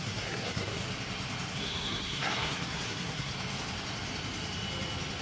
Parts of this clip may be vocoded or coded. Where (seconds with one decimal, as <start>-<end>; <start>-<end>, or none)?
0.0-0.8; 1.5-3.3